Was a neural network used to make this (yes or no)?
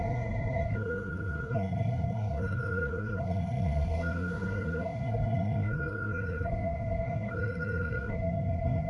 yes